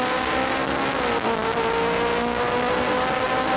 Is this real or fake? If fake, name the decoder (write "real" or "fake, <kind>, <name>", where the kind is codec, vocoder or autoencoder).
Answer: real